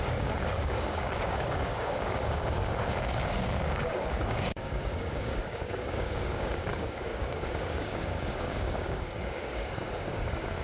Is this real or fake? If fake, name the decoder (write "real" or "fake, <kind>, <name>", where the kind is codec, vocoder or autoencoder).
fake, codec, DAC